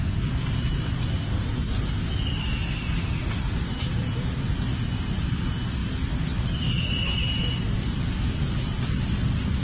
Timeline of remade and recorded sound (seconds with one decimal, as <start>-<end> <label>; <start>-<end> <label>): 0.0-9.6 recorded